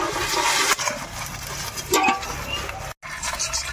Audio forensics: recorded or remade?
recorded